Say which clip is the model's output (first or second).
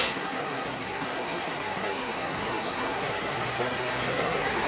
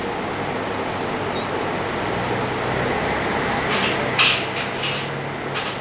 first